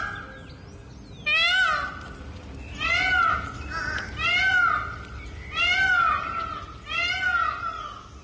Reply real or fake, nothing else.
real